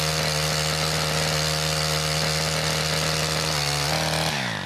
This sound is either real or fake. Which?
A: real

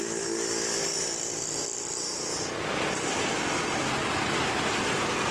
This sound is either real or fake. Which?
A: real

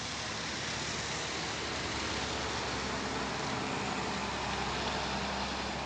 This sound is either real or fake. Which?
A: real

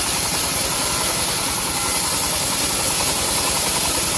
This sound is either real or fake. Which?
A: fake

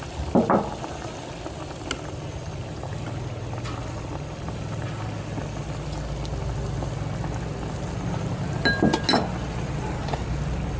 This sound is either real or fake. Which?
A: real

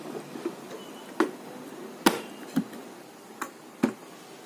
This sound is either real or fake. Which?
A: real